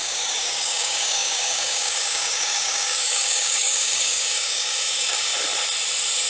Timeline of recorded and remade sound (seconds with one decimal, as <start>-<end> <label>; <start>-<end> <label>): 0.0-5.3 remade; 5.3-6.3 recorded